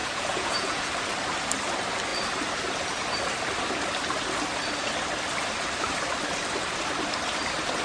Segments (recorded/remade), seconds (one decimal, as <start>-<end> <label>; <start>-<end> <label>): 0.0-0.9 remade; 0.9-7.8 recorded